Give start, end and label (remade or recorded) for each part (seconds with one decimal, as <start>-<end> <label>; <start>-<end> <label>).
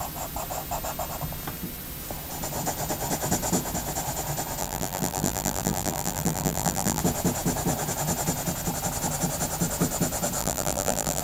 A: 0.0-4.6 recorded; 4.6-7.0 remade; 7.0-10.4 recorded; 10.4-11.2 remade